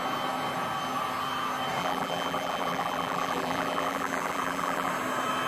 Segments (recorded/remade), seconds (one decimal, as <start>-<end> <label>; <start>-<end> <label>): 0.0-1.8 recorded; 1.8-4.9 remade; 4.9-5.5 recorded